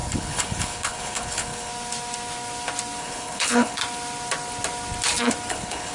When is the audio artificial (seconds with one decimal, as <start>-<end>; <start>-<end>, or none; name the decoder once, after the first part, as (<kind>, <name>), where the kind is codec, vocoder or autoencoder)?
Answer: 0.0-1.7 (codec, HILCodec); 3.0-3.8; 5.5-5.9